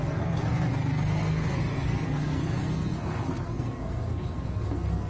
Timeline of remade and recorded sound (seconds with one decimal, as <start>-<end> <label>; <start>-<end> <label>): 0.0-5.1 remade